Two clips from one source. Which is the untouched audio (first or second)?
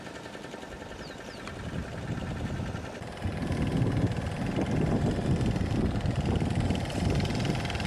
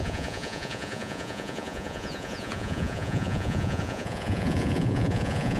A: first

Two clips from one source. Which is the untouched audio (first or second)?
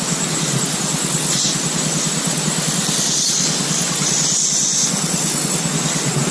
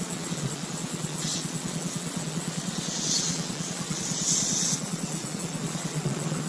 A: first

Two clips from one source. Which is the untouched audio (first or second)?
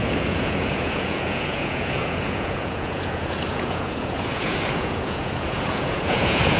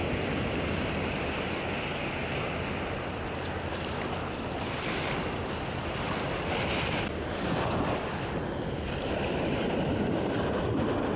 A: second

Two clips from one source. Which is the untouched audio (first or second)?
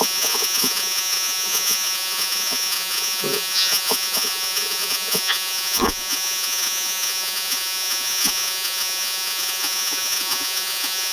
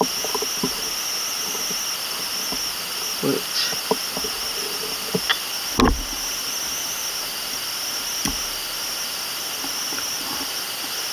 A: second